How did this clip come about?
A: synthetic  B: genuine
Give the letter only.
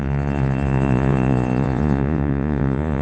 A